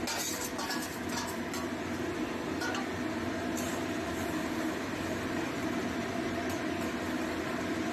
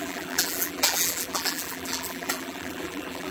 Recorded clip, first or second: first